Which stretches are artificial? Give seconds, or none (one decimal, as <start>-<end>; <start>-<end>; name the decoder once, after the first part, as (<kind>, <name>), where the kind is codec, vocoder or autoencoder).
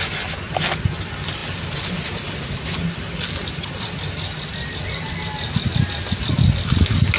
none